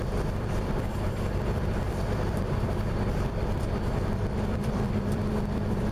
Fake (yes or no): yes